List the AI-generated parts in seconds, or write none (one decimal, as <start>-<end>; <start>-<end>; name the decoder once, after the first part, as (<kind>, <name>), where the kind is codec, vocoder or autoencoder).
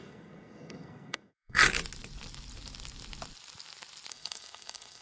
0.0-1.6 (codec, SNAC); 4.1-5.0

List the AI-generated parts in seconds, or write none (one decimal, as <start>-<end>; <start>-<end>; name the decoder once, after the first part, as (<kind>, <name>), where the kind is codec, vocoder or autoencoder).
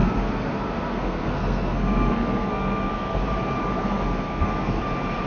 0.0-3.2 (codec, SNAC); 3.8-4.8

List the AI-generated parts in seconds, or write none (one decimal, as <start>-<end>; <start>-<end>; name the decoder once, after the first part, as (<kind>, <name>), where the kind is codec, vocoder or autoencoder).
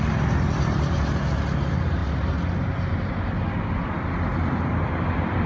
none